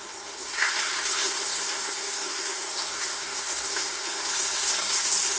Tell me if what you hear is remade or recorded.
remade